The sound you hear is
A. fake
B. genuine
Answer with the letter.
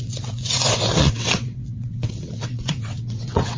A